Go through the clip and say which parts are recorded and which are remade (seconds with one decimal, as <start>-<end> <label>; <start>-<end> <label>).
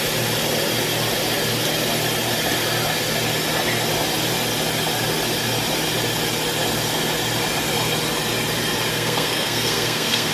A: 0.0-8.9 recorded; 8.9-10.3 remade